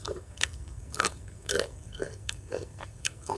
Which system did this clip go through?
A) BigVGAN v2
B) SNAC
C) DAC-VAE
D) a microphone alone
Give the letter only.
B